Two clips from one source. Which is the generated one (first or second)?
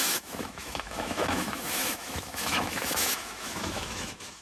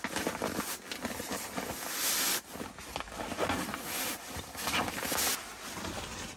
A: first